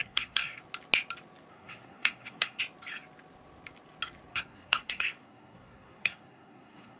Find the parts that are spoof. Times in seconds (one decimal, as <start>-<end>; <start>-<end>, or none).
0.0-0.6; 1.5-2.6; 4.3-7.0